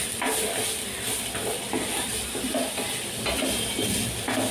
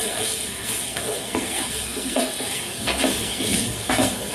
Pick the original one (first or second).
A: first